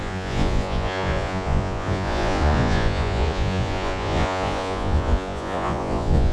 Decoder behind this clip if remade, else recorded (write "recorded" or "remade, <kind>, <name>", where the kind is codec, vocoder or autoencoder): remade, vocoder, Vocos